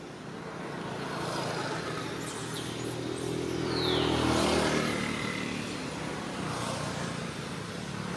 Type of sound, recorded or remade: recorded